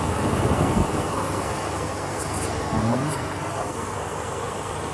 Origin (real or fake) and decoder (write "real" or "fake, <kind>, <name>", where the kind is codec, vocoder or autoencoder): fake, codec, SNAC